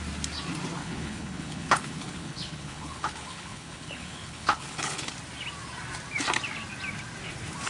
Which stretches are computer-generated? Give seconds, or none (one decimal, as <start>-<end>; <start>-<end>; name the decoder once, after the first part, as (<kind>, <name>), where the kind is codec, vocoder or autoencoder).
0.8-5.1 (codec, HILCodec)